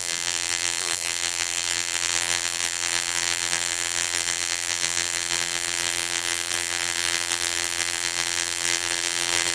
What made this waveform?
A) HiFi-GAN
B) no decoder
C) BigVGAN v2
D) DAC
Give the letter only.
C